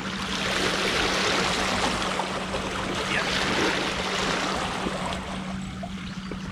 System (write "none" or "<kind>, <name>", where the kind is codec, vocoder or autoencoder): none